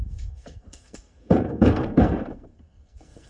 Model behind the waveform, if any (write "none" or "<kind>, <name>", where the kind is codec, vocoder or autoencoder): codec, SNAC